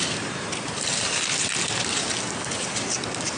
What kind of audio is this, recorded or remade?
recorded